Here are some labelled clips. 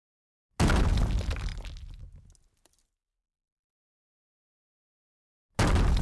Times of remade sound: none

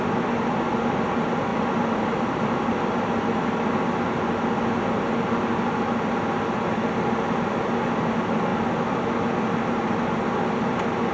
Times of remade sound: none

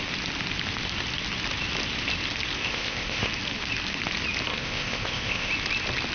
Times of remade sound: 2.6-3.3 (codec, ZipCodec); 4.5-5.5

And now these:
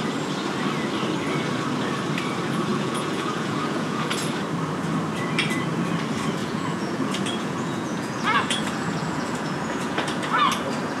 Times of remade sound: 2.7-4.1 (vocoder, Vocos); 6.4-10.3

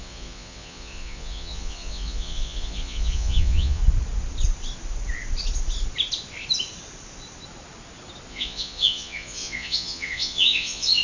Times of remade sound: 0.0-3.8 (vocoder, Vocos); 8.3-11.0

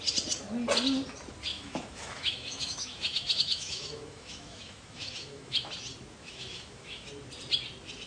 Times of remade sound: 1.5-5.7 (autoencoder, DAC-VAE); 6.2-7.1

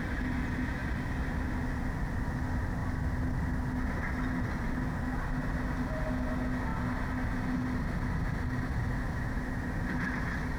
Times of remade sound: 0.8-1.5 (vocoder, BigVGAN v2)

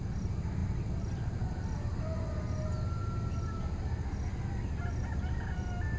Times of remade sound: none